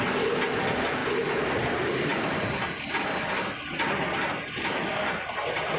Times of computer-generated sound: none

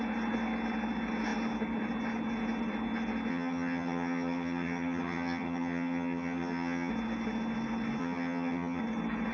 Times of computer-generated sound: 3.3-6.9 (vocoder, HiFi-GAN); 8.0-8.8

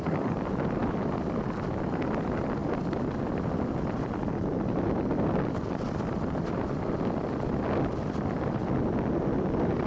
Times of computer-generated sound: none

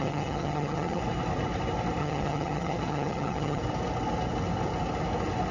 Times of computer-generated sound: 0.0-1.0 (vocoder, HiFi-GAN); 2.0-3.6

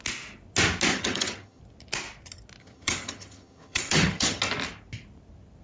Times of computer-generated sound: 0.9-1.6 (vocoder, HiFi-GAN); 2.6-4.4

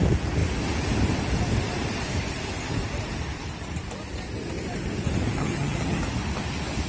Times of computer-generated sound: 5.4-6.0 (vocoder, HiFi-GAN)